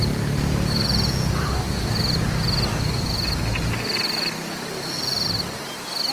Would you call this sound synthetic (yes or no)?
no